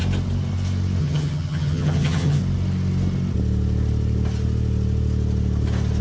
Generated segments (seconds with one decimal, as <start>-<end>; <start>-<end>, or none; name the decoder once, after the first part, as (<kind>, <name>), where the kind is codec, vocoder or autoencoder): 1.0-2.4 (vocoder, HiFi-GAN)